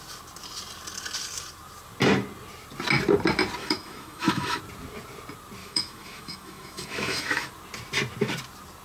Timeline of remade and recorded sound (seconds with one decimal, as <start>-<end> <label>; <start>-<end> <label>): 0.0-3.6 recorded; 3.6-4.6 remade; 4.6-5.6 recorded; 5.6-7.5 remade; 7.5-8.8 recorded

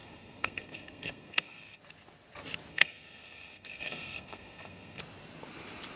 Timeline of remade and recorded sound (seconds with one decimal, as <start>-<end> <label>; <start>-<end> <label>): 0.0-1.8 remade; 1.8-2.7 recorded; 2.7-5.0 remade; 5.0-6.0 recorded

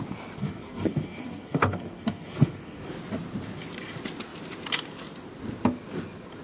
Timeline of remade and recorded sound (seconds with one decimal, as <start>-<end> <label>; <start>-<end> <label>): 0.0-0.4 recorded; 0.4-2.9 remade; 2.9-6.4 recorded

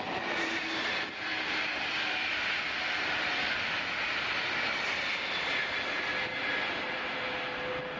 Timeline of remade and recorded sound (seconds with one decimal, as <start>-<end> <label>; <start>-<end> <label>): 0.0-1.3 recorded; 1.3-4.0 remade; 4.0-8.0 recorded

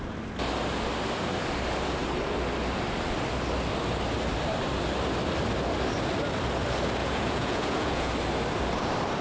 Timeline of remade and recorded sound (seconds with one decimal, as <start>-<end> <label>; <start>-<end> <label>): 0.0-7.0 recorded; 7.0-8.1 remade; 8.1-9.2 recorded